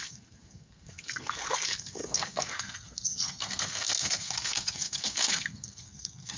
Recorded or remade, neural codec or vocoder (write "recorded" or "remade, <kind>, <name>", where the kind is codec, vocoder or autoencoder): remade, codec, SNAC